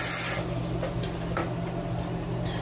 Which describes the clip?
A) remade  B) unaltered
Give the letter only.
B